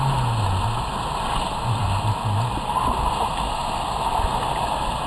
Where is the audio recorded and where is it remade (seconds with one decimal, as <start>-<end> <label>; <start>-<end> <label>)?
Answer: 0.0-5.1 recorded